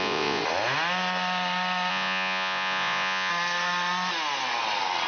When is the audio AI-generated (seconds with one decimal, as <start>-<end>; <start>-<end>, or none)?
0.0-0.4; 1.9-3.3